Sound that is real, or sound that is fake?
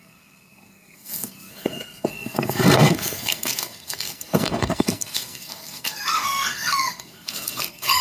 fake